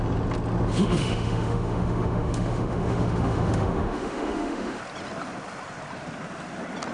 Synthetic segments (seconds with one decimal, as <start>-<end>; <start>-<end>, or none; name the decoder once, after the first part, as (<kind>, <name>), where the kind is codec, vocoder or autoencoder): 0.7-4.8 (autoencoder, DAC-VAE)